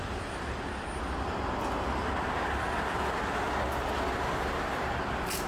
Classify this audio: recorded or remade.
recorded